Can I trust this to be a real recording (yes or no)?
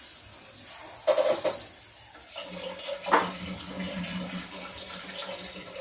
yes